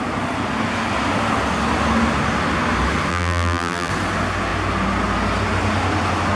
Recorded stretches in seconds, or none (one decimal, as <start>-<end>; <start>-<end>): 0.0-3.1; 3.9-6.4